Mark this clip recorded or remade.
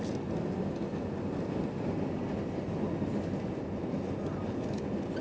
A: recorded